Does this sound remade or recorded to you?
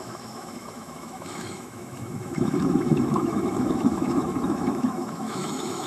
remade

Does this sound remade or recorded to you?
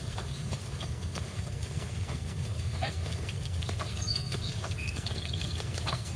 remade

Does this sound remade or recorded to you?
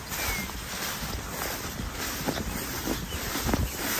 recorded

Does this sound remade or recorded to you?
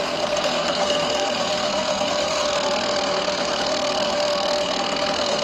remade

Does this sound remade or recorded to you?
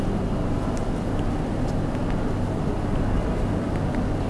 recorded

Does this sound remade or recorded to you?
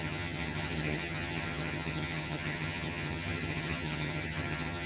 remade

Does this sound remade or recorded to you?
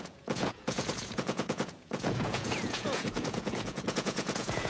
remade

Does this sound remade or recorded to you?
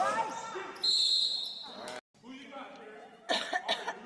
recorded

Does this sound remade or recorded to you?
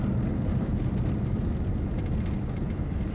recorded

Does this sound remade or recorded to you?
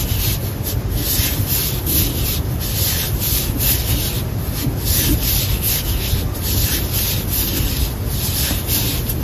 recorded